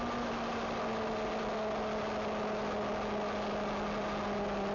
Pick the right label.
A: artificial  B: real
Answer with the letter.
B